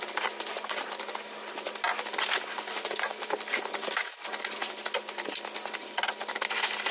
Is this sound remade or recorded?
recorded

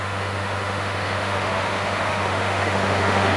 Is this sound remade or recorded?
remade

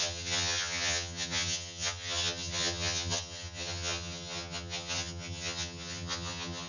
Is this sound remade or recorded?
remade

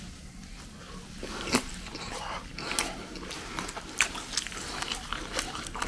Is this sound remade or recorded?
recorded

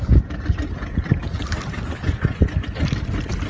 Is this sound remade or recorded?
recorded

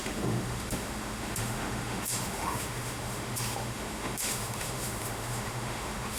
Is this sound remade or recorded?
remade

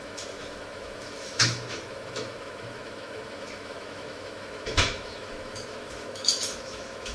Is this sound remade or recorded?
remade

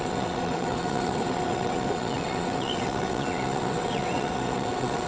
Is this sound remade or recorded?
remade